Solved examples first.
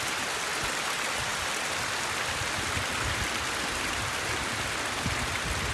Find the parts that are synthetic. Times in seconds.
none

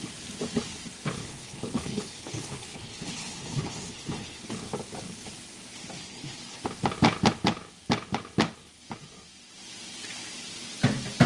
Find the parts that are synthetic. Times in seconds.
1.2-4.4 (codec, HILCodec); 6.0-6.6

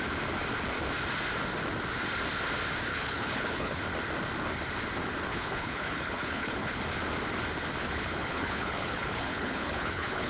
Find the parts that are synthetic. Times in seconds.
2.9-3.8 (codec, HILCodec); 5.3-6.8; 7.8-10.3